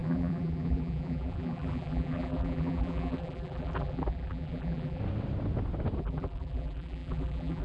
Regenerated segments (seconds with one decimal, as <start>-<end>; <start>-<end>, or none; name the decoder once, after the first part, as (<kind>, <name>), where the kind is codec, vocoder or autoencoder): 0.0-5.0 (vocoder, BigVGAN v2); 6.0-7.6